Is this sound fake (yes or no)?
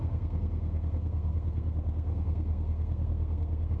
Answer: yes